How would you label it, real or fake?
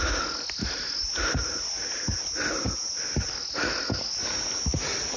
real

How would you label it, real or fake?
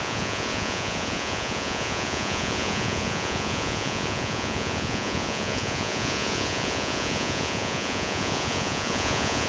fake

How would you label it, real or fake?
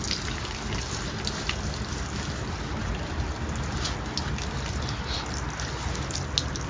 real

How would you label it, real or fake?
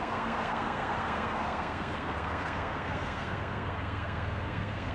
fake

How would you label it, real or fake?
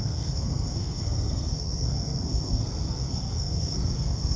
fake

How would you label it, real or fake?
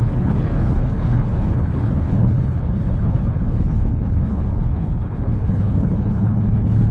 fake